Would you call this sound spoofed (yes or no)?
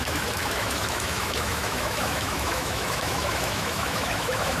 yes